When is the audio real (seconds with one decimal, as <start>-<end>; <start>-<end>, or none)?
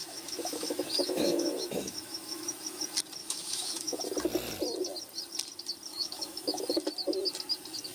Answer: 2.8-3.2; 4.0-5.9; 6.6-7.9